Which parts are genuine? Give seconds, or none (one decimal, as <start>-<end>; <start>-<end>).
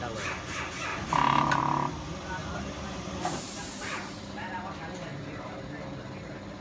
0.0-0.9; 1.6-2.4; 4.5-5.1; 5.7-6.6